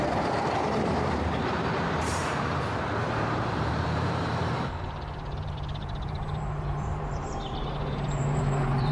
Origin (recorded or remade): remade